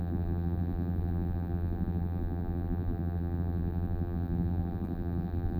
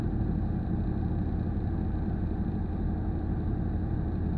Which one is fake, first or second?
first